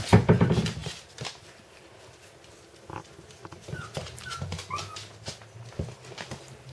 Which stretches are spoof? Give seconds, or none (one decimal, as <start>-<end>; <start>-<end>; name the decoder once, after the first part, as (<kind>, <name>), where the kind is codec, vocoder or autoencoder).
none